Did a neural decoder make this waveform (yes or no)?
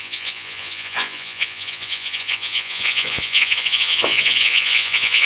yes